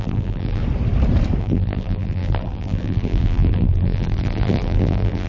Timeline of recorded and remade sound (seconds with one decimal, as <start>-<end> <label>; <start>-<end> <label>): 0.0-0.6 remade; 0.6-1.4 recorded; 1.4-5.3 remade

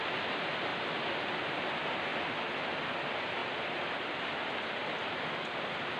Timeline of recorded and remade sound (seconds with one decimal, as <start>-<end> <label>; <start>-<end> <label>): 0.0-0.7 remade; 0.7-1.3 recorded; 1.3-2.1 remade; 2.1-2.8 recorded; 2.8-6.0 remade

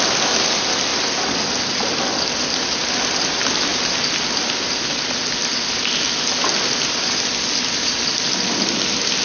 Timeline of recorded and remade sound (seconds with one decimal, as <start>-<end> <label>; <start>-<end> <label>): 0.0-0.9 recorded; 0.9-2.0 remade; 2.0-9.2 recorded

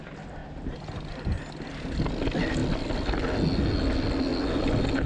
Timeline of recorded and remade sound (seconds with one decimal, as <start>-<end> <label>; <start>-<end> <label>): 0.0-0.4 recorded; 0.4-1.5 remade; 1.5-5.1 recorded

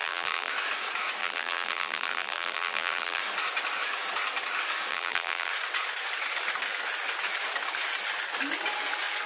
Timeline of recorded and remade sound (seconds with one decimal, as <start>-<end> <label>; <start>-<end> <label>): 0.0-0.5 remade; 0.5-1.2 recorded; 1.2-3.2 remade; 3.2-4.9 recorded; 4.9-5.5 remade; 5.5-9.3 recorded

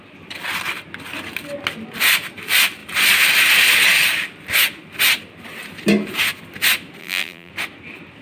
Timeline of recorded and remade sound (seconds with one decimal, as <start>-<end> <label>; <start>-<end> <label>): 0.0-7.0 recorded; 7.0-7.5 remade; 7.5-8.2 recorded

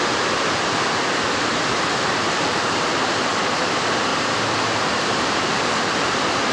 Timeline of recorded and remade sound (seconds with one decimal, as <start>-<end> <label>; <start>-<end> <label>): 0.0-2.2 recorded; 2.2-3.2 remade; 3.2-4.1 recorded; 4.1-5.6 remade; 5.6-6.5 recorded

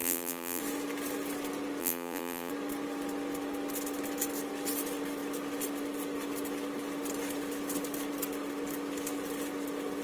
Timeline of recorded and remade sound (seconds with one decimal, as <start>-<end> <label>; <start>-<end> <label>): 0.0-0.6 remade; 0.6-1.8 recorded; 1.8-2.5 remade; 2.5-10.0 recorded